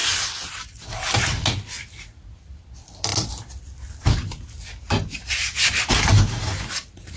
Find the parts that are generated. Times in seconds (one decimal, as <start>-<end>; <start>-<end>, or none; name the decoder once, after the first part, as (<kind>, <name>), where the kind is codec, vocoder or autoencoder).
none